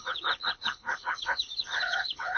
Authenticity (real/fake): fake